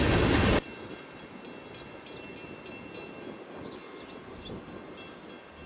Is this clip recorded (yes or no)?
yes